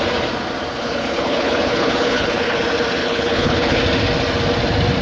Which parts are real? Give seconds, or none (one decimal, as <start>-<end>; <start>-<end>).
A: 0.0-0.7; 2.6-3.0; 3.8-5.0